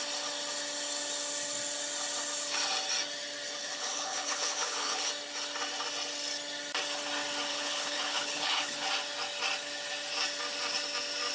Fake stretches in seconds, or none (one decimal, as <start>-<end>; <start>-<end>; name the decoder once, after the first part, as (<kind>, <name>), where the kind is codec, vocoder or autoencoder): 3.6-5.1 (codec, HILCodec); 7.5-8.9